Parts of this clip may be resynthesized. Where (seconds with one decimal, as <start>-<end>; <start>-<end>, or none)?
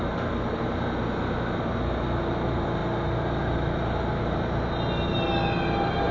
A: none